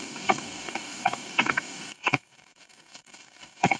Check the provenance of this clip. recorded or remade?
remade